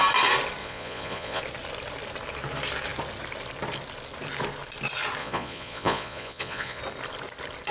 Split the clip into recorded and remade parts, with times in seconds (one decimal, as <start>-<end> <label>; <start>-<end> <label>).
0.0-0.6 recorded; 0.6-1.4 remade; 1.4-5.2 recorded; 5.2-6.8 remade; 6.8-7.7 recorded